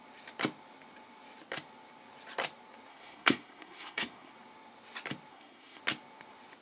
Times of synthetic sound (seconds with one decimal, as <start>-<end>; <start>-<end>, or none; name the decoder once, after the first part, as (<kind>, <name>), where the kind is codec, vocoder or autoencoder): 2.9-4.3 (codec, SNAC); 5.3-5.8